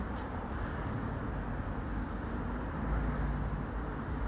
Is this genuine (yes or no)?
yes